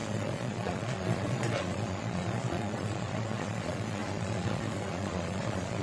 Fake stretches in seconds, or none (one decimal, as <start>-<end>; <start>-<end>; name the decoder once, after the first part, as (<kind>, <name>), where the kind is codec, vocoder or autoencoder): 0.0-5.8 (vocoder, Vocos)